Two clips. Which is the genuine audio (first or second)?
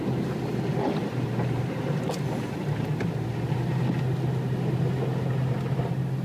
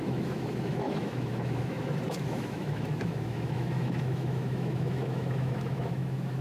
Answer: first